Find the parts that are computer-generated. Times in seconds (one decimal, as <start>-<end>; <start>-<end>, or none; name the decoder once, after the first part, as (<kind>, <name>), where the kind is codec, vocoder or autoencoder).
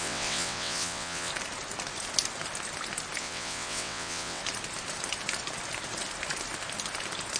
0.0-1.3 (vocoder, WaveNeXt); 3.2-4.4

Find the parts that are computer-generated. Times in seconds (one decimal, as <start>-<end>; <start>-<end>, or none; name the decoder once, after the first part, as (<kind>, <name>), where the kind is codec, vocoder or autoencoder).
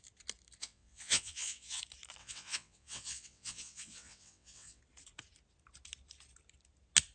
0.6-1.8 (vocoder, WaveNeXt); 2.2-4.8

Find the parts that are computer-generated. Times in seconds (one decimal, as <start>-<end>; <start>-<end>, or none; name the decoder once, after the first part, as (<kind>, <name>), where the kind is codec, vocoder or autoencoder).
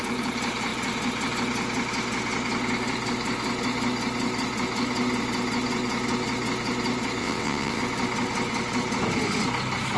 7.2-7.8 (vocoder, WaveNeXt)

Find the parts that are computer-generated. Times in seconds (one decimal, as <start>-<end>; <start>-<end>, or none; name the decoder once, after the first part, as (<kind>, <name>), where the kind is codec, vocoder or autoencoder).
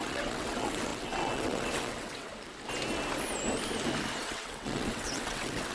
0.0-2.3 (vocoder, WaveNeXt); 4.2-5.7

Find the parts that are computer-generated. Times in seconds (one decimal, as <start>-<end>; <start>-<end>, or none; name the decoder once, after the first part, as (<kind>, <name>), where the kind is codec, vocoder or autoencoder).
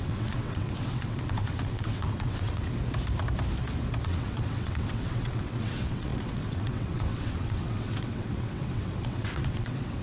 0.0-2.7 (vocoder, WaveNeXt); 4.0-10.0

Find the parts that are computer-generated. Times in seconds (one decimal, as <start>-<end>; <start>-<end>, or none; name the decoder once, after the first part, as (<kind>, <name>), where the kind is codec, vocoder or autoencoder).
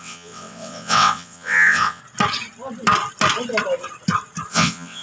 0.0-2.0 (vocoder, WaveNeXt); 4.5-5.0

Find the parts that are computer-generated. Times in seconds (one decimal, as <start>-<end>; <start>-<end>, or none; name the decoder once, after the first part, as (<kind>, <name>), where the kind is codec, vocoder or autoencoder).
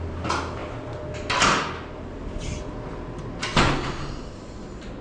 none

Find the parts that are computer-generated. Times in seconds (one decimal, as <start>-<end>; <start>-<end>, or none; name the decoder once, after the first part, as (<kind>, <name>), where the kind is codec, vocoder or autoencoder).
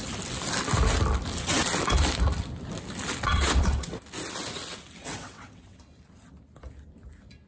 3.3-3.9 (vocoder, WaveNeXt); 5.0-5.8